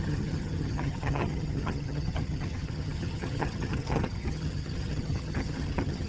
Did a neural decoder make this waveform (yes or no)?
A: yes